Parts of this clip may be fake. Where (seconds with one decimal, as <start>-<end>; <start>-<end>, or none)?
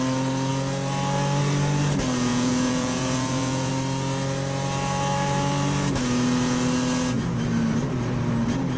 2.3-3.7